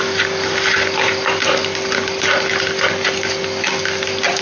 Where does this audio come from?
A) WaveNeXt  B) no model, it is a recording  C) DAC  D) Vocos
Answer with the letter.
B